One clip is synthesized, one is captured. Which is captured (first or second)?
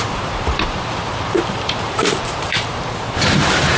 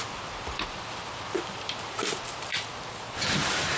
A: second